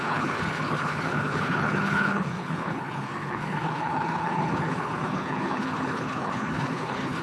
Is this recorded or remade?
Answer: remade